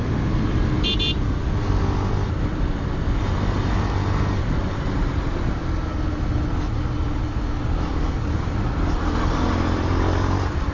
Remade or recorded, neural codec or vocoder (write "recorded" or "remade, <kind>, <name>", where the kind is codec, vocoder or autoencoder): recorded